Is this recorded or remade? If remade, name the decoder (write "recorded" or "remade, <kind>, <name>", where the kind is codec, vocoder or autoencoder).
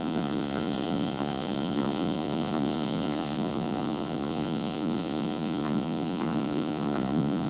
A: remade, vocoder, Vocos